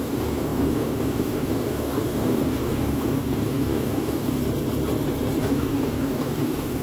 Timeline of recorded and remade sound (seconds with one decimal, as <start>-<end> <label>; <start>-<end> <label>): 0.0-4.4 remade; 4.4-5.4 recorded; 5.4-6.8 remade